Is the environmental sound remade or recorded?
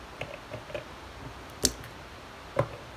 recorded